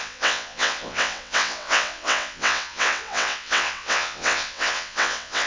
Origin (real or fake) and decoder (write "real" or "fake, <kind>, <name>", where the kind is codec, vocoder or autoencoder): fake, vocoder, WaveNeXt